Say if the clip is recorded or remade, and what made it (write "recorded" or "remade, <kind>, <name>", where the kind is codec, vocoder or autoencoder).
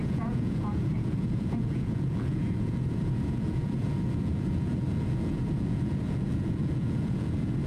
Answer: remade, vocoder, Vocos